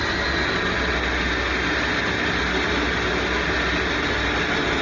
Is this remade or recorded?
recorded